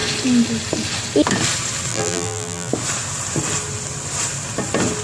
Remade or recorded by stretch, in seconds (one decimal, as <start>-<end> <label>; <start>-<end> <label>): 0.0-1.9 recorded; 1.9-2.7 remade; 2.7-5.0 recorded